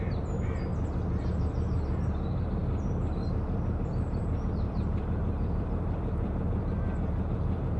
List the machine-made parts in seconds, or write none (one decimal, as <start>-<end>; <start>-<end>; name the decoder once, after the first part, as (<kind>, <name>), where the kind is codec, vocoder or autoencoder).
0.0-0.7 (vocoder, BigVGAN v2); 1.2-7.8